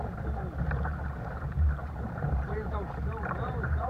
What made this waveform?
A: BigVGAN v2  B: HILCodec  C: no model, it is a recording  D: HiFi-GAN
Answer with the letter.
A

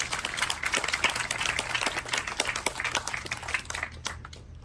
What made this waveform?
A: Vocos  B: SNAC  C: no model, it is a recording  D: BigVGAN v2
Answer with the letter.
C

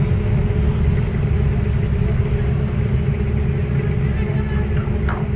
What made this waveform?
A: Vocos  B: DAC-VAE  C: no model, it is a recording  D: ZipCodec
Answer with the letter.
C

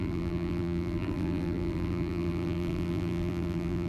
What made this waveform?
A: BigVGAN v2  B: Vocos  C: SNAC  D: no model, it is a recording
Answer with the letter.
A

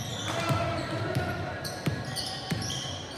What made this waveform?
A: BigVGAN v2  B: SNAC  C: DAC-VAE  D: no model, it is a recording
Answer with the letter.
A